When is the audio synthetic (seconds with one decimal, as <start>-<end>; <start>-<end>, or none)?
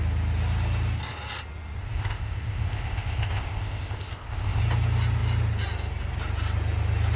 1.8-4.6